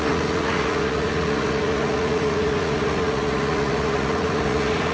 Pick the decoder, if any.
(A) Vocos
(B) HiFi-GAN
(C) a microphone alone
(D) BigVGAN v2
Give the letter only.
A